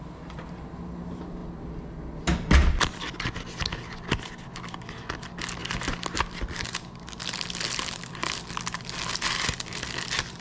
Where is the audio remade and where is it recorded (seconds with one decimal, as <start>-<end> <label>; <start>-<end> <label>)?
0.0-10.4 recorded